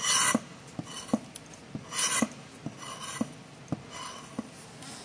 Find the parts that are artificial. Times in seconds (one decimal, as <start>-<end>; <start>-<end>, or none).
none